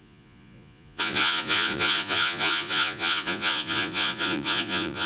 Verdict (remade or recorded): remade